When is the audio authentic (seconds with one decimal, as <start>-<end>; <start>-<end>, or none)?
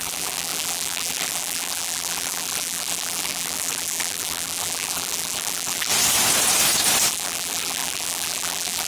5.9-7.1